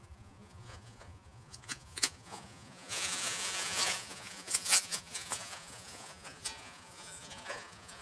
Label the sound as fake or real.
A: fake